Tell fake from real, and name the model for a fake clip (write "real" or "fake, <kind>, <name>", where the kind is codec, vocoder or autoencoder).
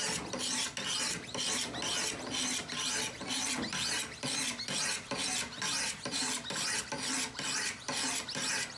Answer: real